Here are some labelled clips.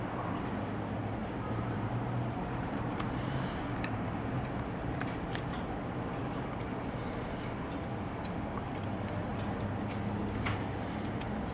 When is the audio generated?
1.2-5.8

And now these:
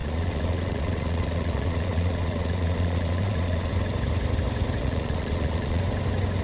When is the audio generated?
0.0-3.7; 4.8-5.8

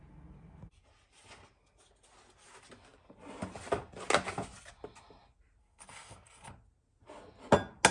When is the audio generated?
5.6-6.5

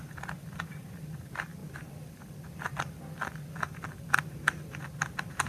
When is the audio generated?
0.0-1.6; 4.2-5.5

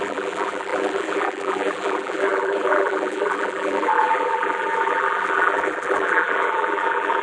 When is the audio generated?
0.0-7.2

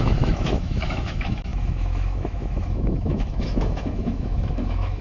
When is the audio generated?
0.0-5.0

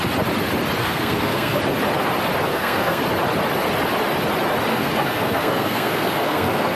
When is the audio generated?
0.8-1.6; 2.5-3.0; 4.7-6.8

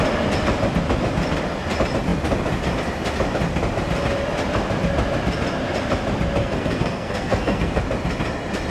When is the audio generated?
6.4-7.8